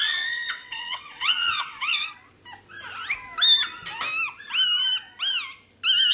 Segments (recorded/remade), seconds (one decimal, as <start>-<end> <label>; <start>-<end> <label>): 0.0-2.1 remade; 2.1-6.1 recorded